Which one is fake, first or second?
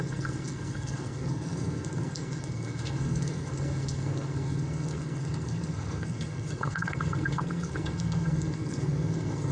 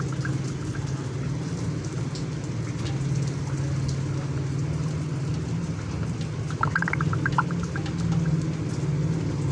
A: first